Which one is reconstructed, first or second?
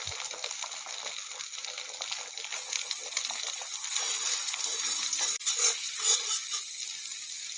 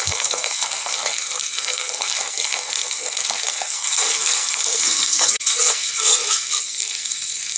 second